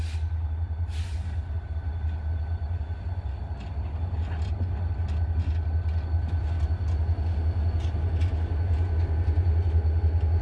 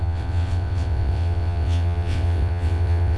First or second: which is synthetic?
second